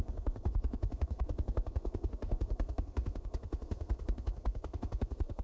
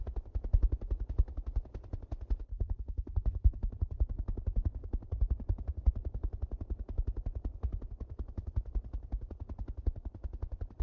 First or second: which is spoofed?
first